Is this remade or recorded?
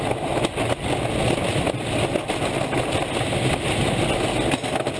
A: recorded